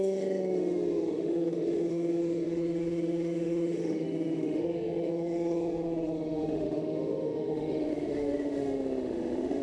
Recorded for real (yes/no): no